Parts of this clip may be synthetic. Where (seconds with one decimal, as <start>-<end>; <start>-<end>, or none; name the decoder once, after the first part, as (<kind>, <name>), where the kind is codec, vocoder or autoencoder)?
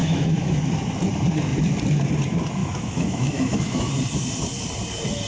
0.0-0.7 (autoencoder, DAC-VAE); 2.6-3.9